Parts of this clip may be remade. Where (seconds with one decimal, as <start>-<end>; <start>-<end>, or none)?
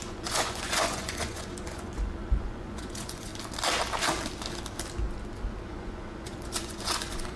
0.0-3.3; 5.6-7.4